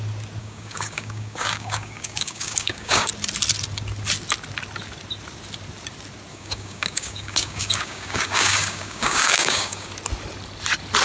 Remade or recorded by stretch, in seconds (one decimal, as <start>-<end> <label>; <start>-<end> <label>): 0.0-0.4 recorded; 0.4-3.1 remade; 3.1-6.3 recorded; 6.3-9.9 remade; 9.9-11.0 recorded